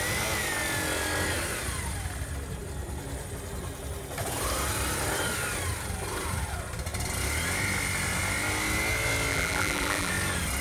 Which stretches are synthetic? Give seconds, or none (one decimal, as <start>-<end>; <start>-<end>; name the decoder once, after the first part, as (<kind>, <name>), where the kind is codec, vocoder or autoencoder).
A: 9.3-10.1 (vocoder, BigVGAN v2)